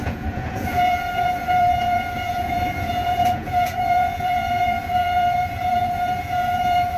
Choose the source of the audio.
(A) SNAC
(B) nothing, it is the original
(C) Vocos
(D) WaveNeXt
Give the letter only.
C